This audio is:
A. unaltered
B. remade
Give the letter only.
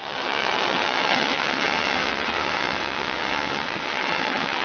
B